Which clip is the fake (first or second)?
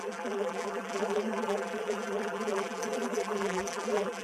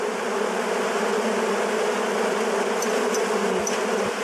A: first